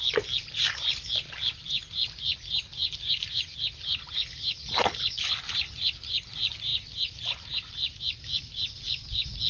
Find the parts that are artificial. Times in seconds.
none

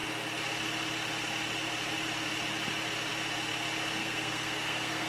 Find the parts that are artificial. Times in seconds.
4.0-5.1

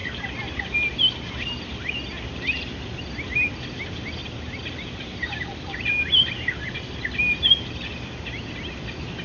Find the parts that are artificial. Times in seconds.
4.2-7.1

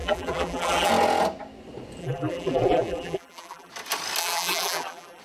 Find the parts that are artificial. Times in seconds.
0.0-0.9; 2.0-3.7; 4.2-5.2

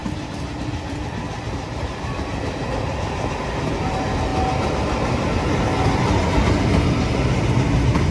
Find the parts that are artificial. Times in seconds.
none

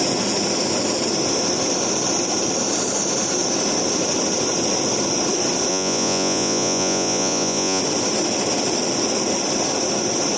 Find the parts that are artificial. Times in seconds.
5.7-7.8